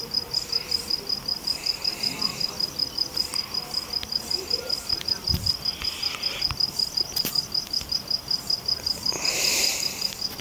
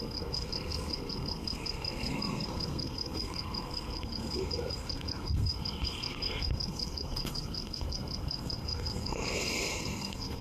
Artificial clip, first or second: second